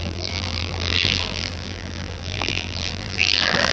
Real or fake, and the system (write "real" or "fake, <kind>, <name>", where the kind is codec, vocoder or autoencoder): fake, vocoder, BigVGAN v2